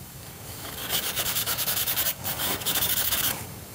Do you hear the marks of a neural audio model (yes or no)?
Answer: yes